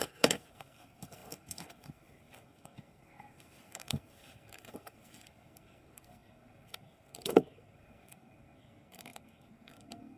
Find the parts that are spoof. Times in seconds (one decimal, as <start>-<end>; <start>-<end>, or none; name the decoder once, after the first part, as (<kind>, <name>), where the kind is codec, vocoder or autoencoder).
0.0-10.2 (codec, SNAC)